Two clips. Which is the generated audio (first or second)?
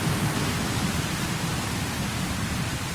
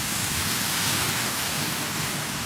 second